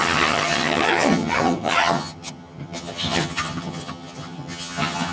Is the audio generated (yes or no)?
yes